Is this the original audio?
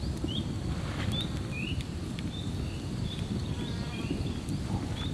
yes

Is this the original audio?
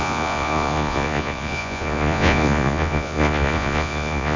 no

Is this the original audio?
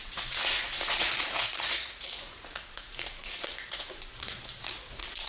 no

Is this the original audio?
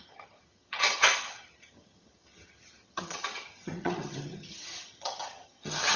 no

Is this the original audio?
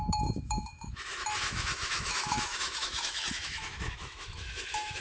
no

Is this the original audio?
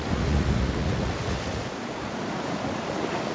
no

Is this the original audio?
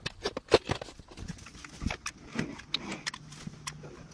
yes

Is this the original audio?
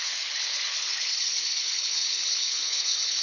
no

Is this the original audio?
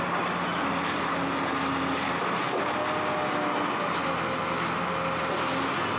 yes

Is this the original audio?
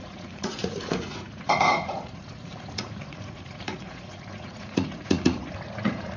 no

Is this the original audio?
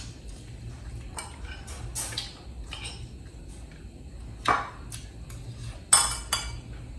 yes